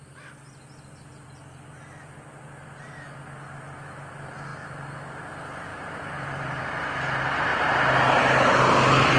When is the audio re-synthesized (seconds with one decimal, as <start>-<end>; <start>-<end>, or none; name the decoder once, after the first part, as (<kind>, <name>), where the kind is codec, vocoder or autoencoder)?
5.7-6.7 (vocoder, BigVGAN v2)